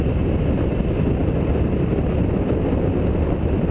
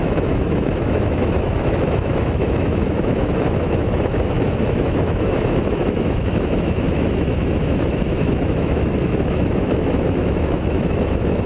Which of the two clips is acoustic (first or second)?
first